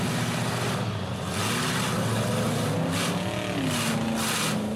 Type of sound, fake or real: real